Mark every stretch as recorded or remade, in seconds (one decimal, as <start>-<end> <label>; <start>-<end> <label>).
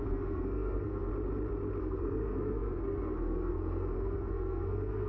0.0-1.1 remade; 1.1-1.8 recorded; 1.8-5.1 remade